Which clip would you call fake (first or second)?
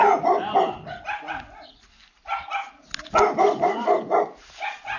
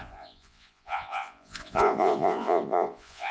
second